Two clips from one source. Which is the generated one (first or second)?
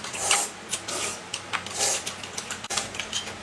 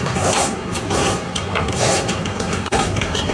second